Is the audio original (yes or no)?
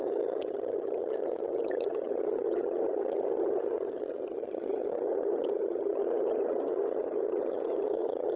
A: no